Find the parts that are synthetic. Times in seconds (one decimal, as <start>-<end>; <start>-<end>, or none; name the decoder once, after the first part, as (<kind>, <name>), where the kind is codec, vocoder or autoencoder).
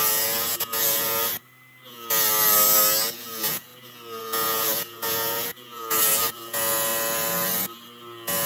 0.0-1.3 (vocoder, Vocos); 3.2-3.7; 4.2-6.9